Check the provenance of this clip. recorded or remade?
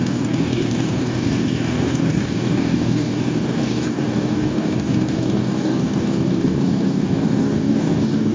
remade